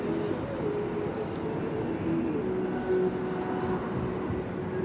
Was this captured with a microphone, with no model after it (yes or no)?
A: yes